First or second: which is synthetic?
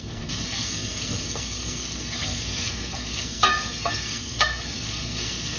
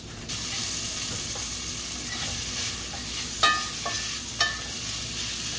first